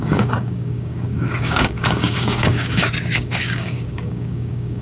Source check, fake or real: fake